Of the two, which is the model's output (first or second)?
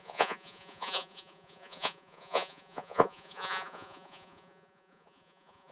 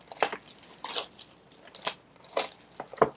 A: first